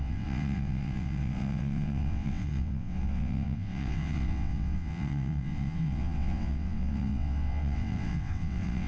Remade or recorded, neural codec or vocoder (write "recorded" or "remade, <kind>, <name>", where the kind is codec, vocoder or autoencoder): remade, vocoder, WaveNeXt